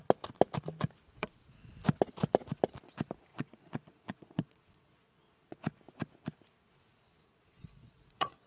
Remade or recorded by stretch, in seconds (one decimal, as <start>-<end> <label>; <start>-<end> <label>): 0.0-1.1 recorded; 1.1-1.7 remade; 1.7-3.3 recorded; 3.3-5.6 remade; 5.6-7.1 recorded; 7.1-8.5 remade